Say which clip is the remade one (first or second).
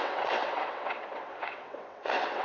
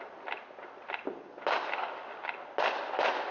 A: first